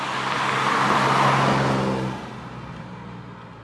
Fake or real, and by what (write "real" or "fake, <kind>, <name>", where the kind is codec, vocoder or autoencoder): real